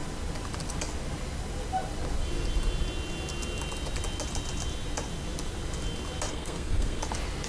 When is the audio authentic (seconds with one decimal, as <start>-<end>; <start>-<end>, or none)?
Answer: 0.0-6.3; 7.0-7.5